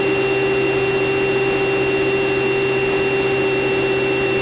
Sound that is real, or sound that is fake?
real